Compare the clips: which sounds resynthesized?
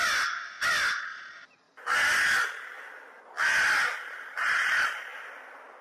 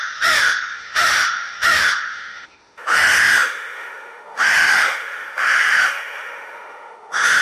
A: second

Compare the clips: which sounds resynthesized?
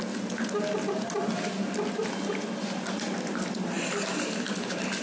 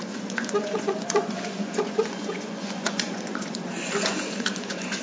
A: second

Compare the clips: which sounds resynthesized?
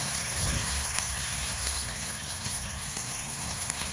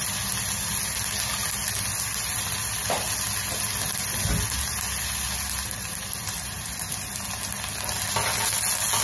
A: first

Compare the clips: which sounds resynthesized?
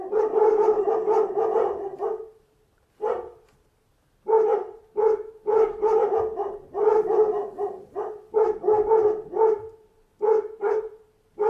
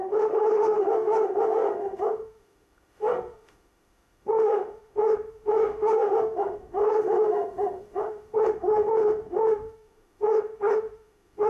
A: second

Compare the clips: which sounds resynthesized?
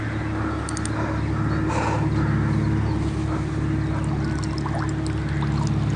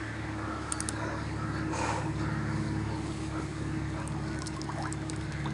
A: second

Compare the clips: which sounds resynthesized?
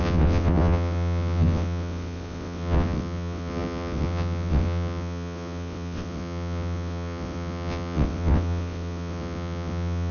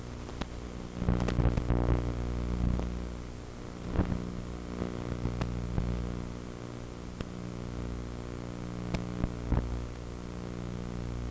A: first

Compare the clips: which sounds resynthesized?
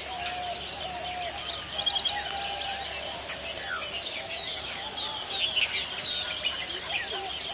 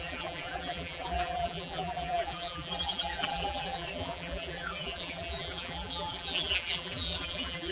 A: second